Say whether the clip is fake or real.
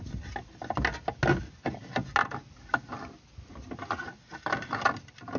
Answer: real